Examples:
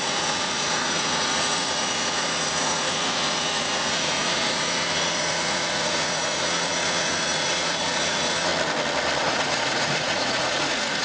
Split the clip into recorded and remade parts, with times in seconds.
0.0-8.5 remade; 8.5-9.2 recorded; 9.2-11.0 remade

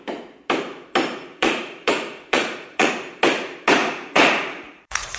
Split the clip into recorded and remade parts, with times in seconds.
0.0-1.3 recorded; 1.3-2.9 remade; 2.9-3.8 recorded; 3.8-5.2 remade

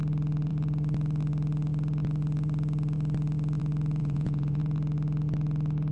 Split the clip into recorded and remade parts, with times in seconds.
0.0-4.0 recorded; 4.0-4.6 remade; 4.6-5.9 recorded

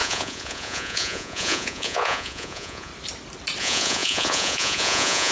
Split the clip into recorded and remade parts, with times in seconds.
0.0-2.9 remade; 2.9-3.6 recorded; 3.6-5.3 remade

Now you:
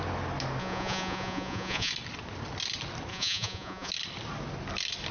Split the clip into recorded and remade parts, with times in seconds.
0.0-0.6 recorded; 0.6-1.9 remade; 1.9-3.1 recorded; 3.1-3.9 remade; 3.9-5.1 recorded